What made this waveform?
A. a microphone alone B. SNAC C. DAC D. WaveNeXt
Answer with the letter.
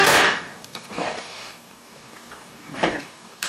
C